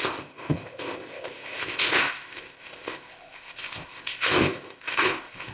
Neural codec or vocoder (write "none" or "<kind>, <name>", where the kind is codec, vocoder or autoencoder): codec, ZipCodec